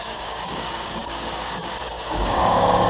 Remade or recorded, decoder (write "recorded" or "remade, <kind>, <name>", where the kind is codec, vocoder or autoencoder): remade, codec, DAC